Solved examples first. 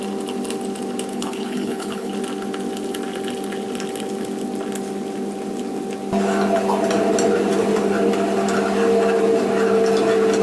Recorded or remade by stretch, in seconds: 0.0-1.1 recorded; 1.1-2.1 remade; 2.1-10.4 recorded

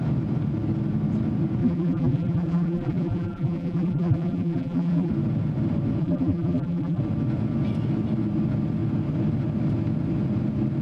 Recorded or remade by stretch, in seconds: 0.0-1.6 recorded; 1.6-5.1 remade; 5.1-6.0 recorded; 6.0-7.0 remade; 7.0-10.8 recorded

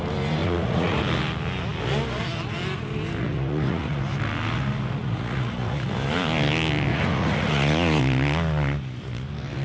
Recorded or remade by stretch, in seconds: 0.0-0.4 recorded; 0.4-1.0 remade; 1.0-3.2 recorded; 3.2-4.0 remade; 4.0-5.0 recorded; 5.0-5.9 remade; 5.9-6.9 recorded; 6.9-8.0 remade; 8.0-9.6 recorded